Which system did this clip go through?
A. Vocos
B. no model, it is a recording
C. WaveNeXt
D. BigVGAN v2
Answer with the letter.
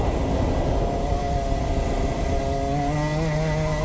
B